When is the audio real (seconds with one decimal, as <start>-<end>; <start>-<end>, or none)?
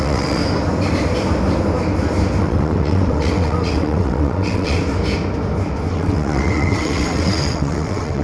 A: 0.4-2.4; 4.8-5.9